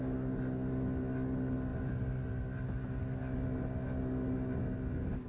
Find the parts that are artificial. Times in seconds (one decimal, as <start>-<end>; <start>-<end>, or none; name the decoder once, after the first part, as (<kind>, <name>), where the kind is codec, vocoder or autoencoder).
none